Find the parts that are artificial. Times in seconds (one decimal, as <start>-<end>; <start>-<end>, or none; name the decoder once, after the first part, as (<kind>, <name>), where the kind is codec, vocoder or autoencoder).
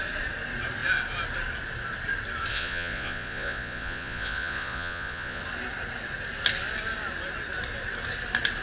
2.5-5.4 (vocoder, Vocos)